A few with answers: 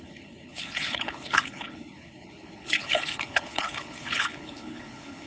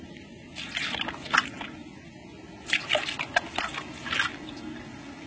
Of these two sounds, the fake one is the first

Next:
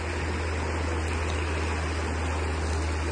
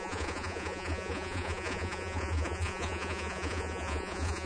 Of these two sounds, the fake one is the second